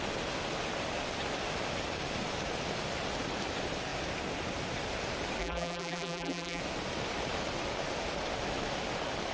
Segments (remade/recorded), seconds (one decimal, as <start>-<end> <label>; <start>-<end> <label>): 0.0-5.4 recorded; 5.4-6.6 remade; 6.6-9.3 recorded